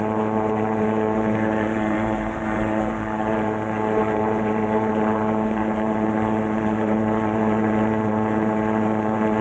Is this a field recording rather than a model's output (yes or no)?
no